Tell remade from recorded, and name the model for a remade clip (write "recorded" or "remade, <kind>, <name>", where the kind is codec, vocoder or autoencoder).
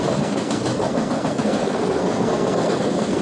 remade, codec, SNAC